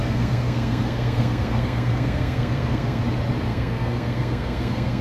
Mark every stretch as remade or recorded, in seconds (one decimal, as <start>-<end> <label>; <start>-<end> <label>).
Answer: 0.0-3.0 remade; 3.0-3.5 recorded; 3.5-5.0 remade